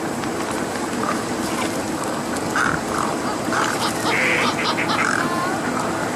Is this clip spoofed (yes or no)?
no